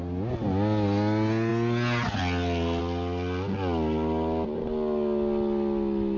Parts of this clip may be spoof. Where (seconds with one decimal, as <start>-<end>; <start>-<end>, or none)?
none

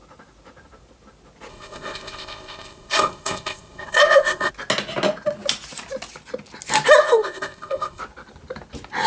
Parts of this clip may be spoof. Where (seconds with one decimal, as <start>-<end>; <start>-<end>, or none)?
1.5-4.5; 7.0-8.0